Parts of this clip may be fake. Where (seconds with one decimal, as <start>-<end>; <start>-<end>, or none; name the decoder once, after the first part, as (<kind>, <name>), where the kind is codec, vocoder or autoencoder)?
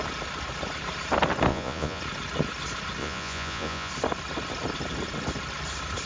1.5-2.0 (vocoder, Vocos); 3.0-3.9